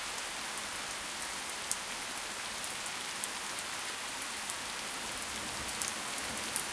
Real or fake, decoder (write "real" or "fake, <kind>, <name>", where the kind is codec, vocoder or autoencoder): real